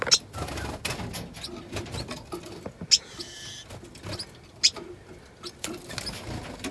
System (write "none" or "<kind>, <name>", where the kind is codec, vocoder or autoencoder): none